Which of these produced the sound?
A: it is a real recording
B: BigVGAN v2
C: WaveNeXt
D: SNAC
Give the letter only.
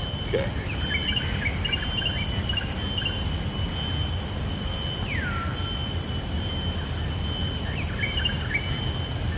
A